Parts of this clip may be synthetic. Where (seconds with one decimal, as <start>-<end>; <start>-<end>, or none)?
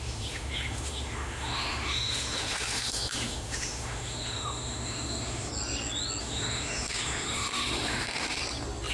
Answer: 0.0-5.5; 6.2-8.4